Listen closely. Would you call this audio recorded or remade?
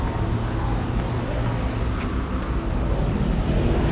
recorded